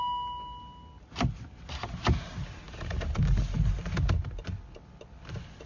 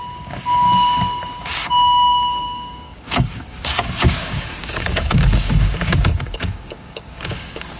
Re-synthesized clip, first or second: second